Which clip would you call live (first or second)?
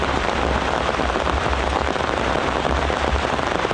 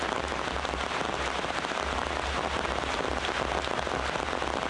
second